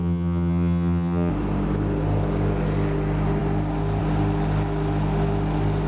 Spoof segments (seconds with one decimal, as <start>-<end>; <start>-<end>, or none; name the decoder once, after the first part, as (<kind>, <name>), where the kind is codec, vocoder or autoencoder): 0.0-1.3 (vocoder, HiFi-GAN)